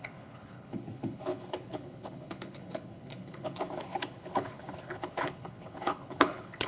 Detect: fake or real fake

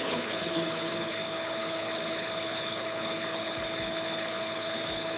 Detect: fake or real fake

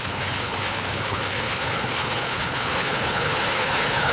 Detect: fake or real fake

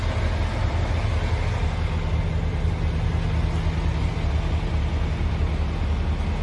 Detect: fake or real real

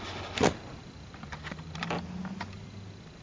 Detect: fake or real real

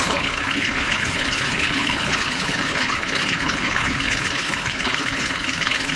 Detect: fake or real fake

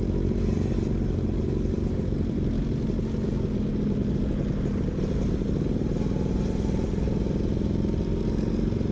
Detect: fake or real real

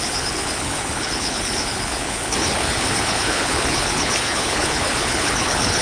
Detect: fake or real fake